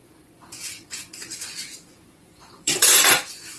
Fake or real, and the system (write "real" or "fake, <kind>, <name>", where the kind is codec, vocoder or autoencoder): fake, vocoder, Vocos